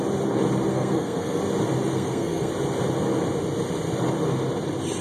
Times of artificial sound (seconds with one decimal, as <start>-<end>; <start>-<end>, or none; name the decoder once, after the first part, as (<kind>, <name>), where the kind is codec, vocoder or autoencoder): 0.7-1.4 (codec, SNAC); 1.9-2.5